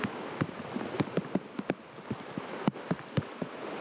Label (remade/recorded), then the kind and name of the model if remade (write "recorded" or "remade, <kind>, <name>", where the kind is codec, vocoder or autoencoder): recorded